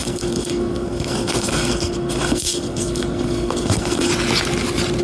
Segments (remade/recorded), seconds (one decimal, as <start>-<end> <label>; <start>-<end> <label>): 0.0-4.1 remade; 4.1-5.0 recorded